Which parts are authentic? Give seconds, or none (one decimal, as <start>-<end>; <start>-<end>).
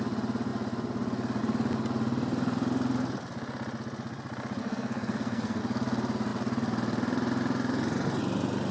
0.0-4.6; 5.6-8.7